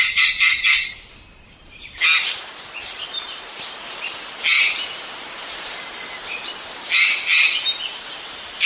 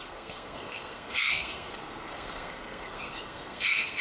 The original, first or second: first